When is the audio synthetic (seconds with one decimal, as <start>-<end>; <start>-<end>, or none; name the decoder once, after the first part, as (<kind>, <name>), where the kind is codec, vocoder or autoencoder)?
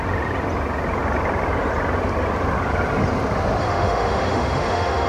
3.6-5.1 (autoencoder, DAC-VAE)